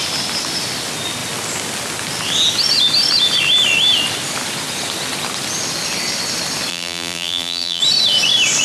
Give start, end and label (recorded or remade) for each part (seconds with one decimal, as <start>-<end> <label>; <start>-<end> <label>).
0.0-6.7 recorded; 6.7-7.8 remade; 7.8-8.6 recorded